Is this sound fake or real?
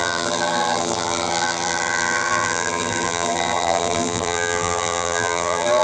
fake